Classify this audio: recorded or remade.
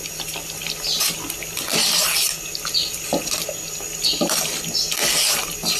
recorded